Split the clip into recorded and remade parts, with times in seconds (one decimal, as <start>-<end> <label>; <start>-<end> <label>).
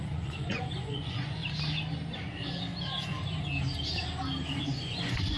0.0-1.4 remade; 1.4-4.6 recorded; 4.6-5.4 remade